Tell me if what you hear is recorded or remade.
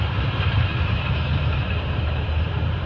remade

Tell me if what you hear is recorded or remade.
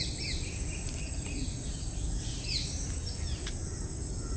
recorded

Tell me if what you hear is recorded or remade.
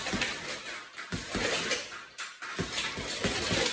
recorded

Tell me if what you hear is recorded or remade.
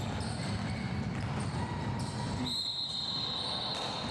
recorded